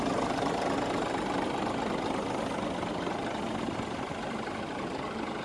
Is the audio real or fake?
real